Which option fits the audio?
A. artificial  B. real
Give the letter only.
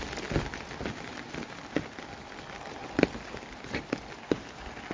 B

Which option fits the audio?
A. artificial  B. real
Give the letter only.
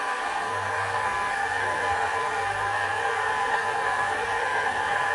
A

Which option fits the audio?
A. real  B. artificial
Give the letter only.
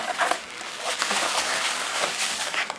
B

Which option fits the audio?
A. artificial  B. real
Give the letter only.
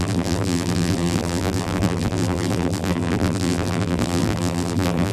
A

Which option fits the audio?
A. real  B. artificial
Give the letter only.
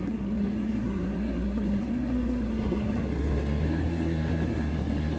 B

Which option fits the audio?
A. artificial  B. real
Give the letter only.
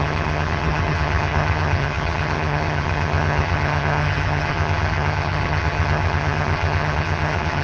A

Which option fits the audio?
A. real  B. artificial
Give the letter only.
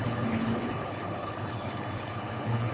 B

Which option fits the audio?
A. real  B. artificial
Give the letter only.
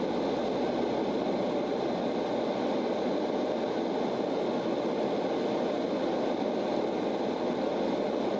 A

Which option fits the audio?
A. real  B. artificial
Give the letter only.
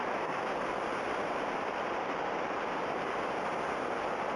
A